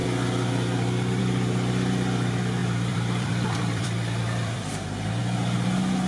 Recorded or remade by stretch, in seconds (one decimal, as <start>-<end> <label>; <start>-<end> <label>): 0.0-2.6 recorded; 2.6-5.2 remade; 5.2-6.1 recorded